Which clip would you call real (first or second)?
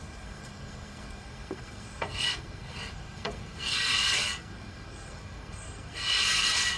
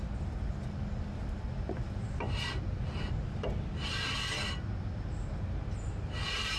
second